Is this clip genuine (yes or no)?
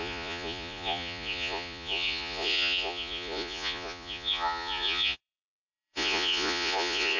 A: no